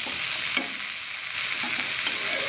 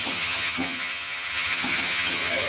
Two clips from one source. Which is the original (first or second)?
first